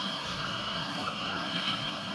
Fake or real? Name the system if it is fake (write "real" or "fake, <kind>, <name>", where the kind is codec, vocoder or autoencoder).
fake, codec, SNAC